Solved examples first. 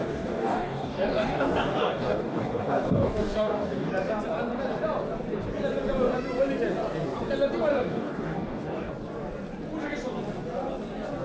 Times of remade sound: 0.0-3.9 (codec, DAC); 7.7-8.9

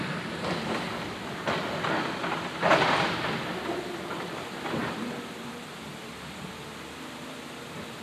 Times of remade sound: 2.2-6.5 (vocoder, BigVGAN v2)

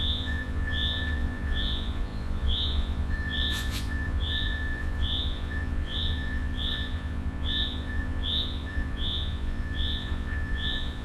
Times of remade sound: 0.0-11.0 (vocoder, Vocos)

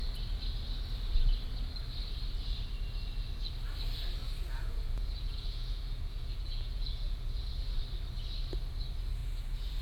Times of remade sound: 4.2-7.5 (vocoder, Vocos); 9.2-9.8

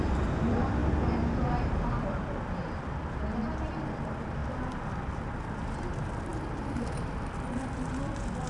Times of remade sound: none

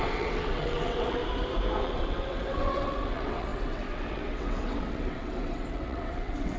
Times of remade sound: 0.0-1.2 (vocoder, WaveNeXt); 1.8-6.6

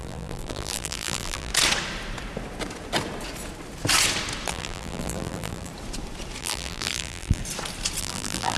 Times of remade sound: 0.0-1.5 (vocoder, BigVGAN v2); 4.5-5.7; 6.4-7.4; 8.0-8.6

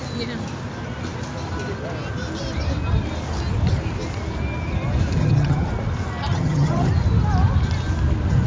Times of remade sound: 5.2-5.7 (vocoder, HiFi-GAN); 6.3-6.9